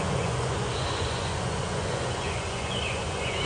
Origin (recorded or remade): remade